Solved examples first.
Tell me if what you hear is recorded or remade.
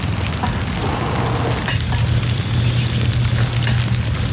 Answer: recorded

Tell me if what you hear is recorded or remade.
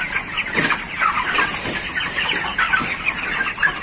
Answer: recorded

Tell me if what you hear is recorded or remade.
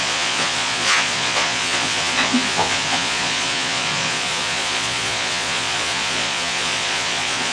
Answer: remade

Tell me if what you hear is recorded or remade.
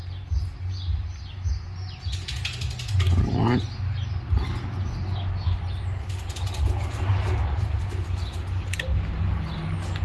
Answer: recorded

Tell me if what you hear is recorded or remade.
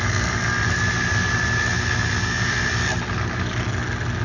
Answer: recorded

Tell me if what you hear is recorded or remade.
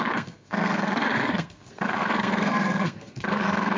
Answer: remade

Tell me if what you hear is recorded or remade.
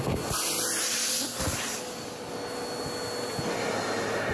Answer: recorded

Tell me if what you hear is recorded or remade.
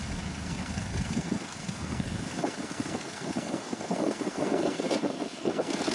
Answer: remade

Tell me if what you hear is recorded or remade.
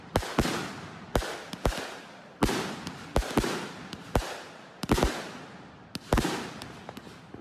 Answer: recorded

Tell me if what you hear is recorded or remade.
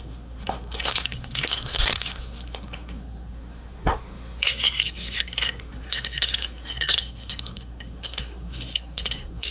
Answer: remade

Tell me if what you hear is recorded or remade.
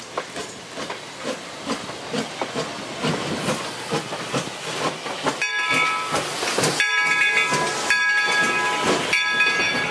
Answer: recorded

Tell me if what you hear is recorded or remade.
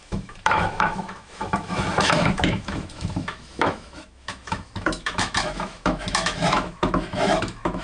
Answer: remade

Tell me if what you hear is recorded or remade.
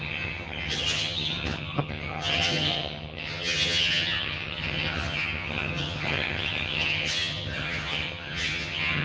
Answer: remade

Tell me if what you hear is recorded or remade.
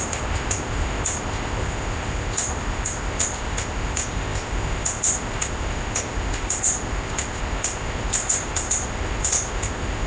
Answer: remade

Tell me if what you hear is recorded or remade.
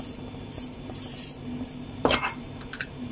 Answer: remade